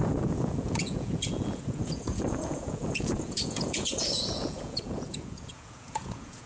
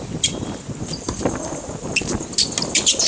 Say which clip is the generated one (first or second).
first